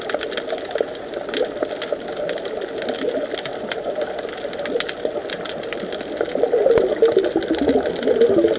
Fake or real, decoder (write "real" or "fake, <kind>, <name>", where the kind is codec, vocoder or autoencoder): real